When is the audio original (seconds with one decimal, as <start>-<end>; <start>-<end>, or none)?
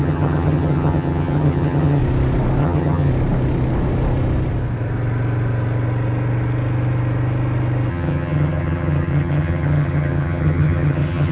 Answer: 2.0-2.6; 3.1-7.9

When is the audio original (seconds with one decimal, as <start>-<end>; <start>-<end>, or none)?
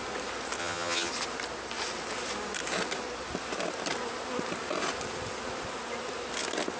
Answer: 0.0-0.6; 1.1-6.8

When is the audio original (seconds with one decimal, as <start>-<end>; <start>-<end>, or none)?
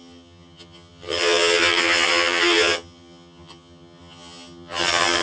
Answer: none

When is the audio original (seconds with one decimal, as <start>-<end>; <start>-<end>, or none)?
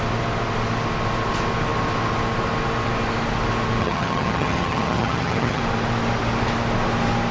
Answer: 0.0-3.8; 5.6-7.3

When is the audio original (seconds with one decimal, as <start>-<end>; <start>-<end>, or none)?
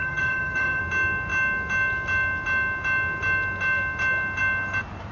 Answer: 0.8-5.1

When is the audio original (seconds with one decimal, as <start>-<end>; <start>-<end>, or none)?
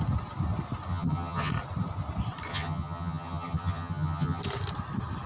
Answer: 0.0-0.9; 1.5-2.5; 4.4-5.3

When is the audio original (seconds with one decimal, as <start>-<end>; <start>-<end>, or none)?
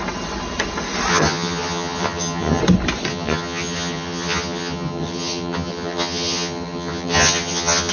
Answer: 0.0-1.1; 2.6-3.1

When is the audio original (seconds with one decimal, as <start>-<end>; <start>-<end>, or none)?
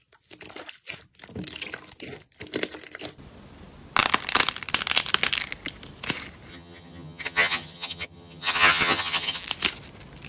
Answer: 0.0-6.5; 9.4-10.3